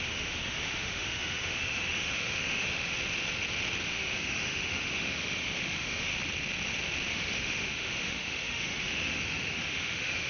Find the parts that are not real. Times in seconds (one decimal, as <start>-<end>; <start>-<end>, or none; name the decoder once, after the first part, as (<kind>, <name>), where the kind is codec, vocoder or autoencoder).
0.0-2.9 (autoencoder, DAC-VAE); 3.9-6.1; 7.1-10.3